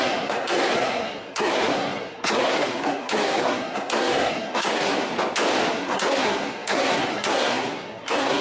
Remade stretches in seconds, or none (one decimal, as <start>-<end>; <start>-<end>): 0.0-5.1; 5.7-8.4